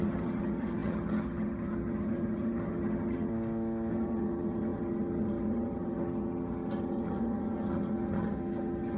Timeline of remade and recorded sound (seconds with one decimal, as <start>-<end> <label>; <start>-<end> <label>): 0.0-3.3 remade; 3.3-3.9 recorded; 3.9-9.0 remade